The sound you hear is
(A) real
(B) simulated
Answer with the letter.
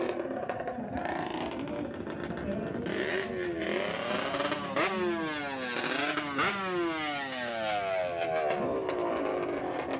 A